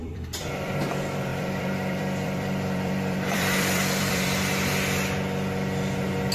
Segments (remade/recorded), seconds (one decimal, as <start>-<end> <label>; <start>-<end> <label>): 0.0-0.7 remade; 0.7-1.3 recorded; 1.3-4.5 remade; 4.5-6.3 recorded